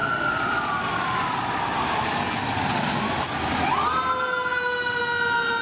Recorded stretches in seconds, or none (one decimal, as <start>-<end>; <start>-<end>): 0.0-4.5; 5.0-5.6